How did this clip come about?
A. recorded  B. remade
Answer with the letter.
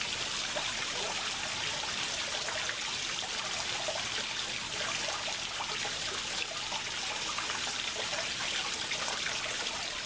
A